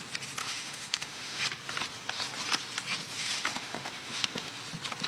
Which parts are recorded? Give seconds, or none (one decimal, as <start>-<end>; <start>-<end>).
0.0-0.4; 1.4-3.2; 4.5-5.1